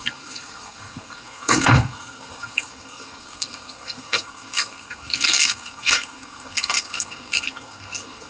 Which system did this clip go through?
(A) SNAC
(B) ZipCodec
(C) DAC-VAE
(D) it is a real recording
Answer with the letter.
A